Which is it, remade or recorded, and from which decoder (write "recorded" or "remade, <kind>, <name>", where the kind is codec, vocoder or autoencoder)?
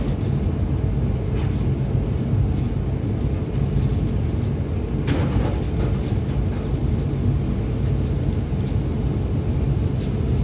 recorded